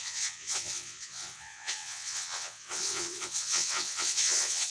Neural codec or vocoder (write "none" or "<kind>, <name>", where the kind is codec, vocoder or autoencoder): vocoder, WaveNeXt